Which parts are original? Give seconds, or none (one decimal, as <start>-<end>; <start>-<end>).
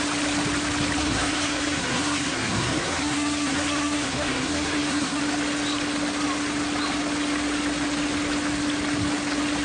0.0-1.0; 5.2-9.6